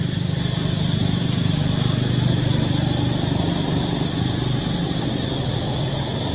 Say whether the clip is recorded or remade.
recorded